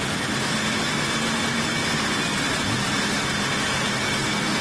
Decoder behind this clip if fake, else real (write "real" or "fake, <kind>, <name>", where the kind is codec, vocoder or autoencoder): real